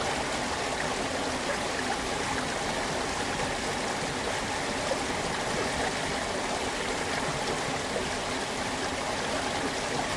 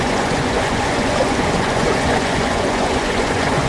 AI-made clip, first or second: second